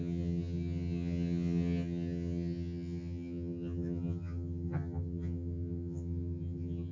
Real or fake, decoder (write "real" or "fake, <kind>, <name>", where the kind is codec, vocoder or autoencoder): fake, vocoder, HiFi-GAN